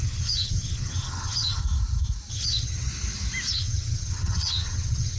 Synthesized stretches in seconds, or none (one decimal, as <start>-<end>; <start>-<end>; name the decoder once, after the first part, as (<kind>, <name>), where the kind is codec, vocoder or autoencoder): 0.0-1.6 (vocoder, HiFi-GAN); 2.3-2.9; 3.5-5.2